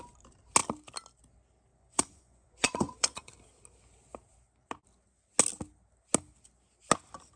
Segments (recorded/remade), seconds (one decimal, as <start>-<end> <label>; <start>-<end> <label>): 0.0-1.7 recorded; 1.7-3.3 remade; 3.3-7.4 recorded